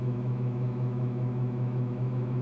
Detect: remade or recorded remade